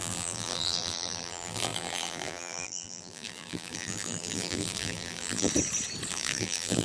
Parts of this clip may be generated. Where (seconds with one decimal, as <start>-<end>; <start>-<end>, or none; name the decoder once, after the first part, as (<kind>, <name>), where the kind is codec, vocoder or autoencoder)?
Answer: 0.0-5.5 (vocoder, BigVGAN v2); 6.1-6.8